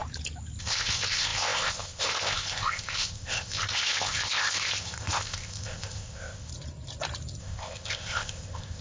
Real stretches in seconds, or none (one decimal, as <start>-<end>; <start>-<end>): 0.0-0.6; 6.5-7.4